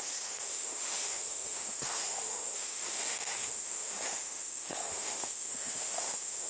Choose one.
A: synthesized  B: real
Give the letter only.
A